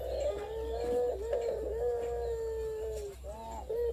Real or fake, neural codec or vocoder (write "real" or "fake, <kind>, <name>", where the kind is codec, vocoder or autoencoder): real